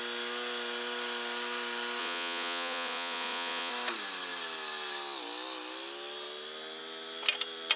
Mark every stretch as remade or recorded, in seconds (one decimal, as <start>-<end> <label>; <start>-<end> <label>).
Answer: 0.0-2.0 recorded; 2.0-3.7 remade; 3.7-7.8 recorded